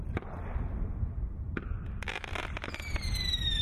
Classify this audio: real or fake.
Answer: fake